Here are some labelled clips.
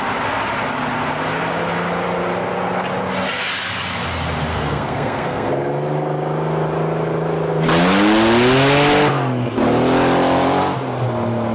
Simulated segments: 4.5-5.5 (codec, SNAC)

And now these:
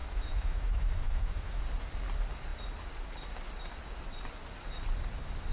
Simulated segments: 0.0-1.6 (autoencoder, DAC-VAE)

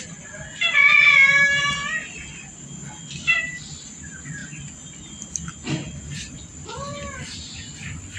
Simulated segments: none

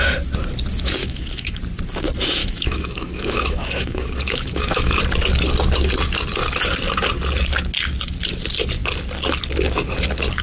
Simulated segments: 1.0-1.6 (autoencoder, DAC-VAE); 2.4-5.0

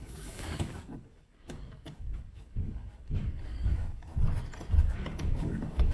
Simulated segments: 0.0-4.1 (codec, DAC); 4.8-5.9